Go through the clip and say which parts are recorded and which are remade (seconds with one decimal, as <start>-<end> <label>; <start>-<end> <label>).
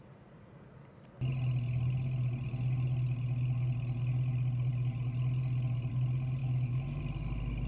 0.0-6.4 recorded; 6.4-7.0 remade; 7.0-7.7 recorded